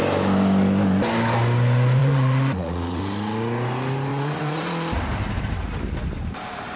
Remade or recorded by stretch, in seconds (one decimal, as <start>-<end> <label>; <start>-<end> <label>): 0.0-2.0 recorded; 2.0-3.0 remade; 3.0-4.1 recorded; 4.1-5.0 remade; 5.0-6.8 recorded